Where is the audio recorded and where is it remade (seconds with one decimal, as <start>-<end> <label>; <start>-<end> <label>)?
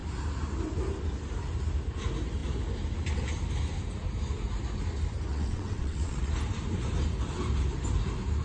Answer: 0.0-5.3 recorded; 5.3-6.3 remade; 6.3-8.4 recorded